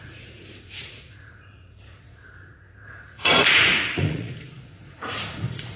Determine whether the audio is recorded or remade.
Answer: remade